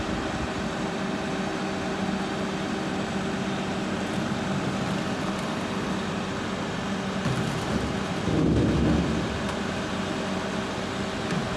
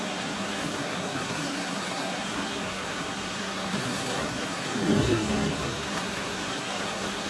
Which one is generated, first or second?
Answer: second